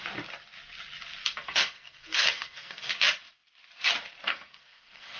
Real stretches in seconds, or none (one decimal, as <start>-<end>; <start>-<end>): 0.0-1.2; 2.9-4.3